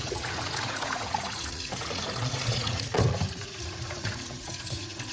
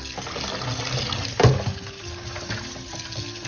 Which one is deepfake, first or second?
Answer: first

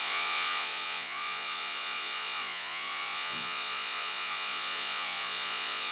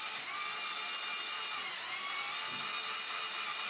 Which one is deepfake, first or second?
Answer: first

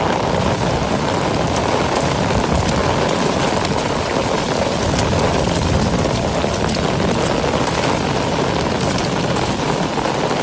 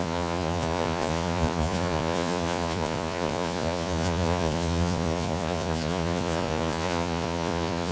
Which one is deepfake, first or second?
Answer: second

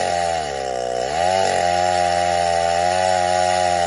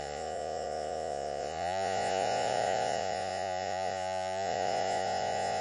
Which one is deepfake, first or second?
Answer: second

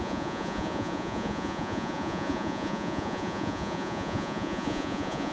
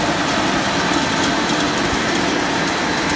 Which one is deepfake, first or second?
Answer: first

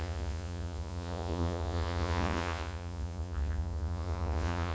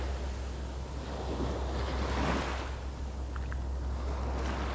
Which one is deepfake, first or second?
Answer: first